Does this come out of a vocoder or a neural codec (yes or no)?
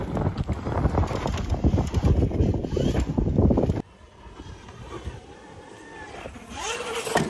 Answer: no